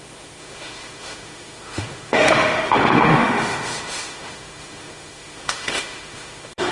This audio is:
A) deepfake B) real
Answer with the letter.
A